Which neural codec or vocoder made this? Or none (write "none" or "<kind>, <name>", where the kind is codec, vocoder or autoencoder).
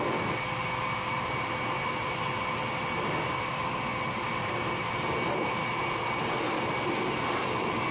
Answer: none